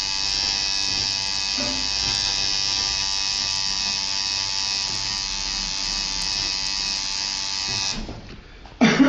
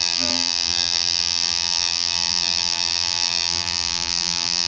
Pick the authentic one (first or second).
first